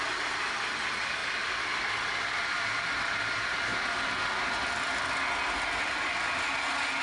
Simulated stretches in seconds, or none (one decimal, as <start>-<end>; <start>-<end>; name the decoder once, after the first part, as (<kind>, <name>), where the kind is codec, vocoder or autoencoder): none